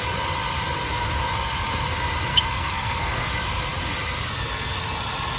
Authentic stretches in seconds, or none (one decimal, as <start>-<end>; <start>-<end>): 0.0-2.3; 3.3-5.4